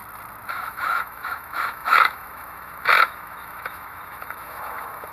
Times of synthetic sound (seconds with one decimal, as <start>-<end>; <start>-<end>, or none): 0.5-5.1